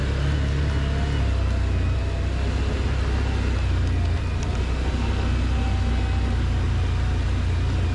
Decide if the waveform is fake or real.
real